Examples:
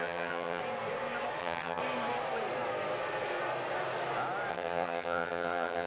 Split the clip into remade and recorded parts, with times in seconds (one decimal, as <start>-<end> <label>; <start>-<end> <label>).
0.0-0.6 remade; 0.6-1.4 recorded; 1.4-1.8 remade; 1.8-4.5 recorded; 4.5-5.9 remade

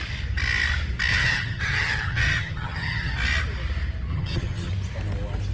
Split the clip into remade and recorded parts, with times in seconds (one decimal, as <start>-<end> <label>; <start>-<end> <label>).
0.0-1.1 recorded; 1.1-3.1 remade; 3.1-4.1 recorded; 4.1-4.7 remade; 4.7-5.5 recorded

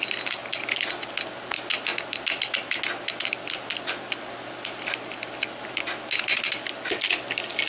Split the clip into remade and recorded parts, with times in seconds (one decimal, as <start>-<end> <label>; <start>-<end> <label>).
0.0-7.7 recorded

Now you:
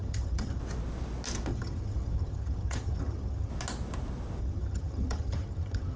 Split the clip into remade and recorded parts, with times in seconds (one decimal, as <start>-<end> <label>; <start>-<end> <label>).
0.0-0.6 remade; 0.6-1.5 recorded; 1.5-3.5 remade; 3.5-4.4 recorded; 4.4-6.0 remade

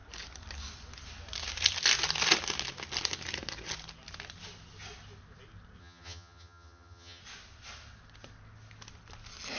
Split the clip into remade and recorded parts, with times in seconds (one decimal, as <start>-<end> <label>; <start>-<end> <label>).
0.0-5.8 recorded; 5.8-7.2 remade; 7.2-9.6 recorded